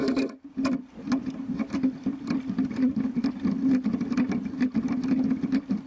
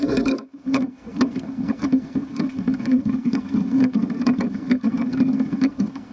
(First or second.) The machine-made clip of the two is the second